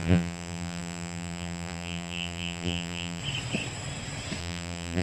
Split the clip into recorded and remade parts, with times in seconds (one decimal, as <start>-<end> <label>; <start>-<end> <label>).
0.0-3.2 remade; 3.2-4.4 recorded; 4.4-5.0 remade